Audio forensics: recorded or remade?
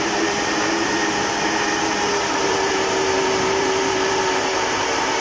remade